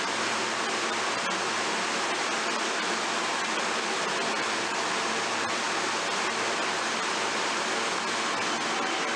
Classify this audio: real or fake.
real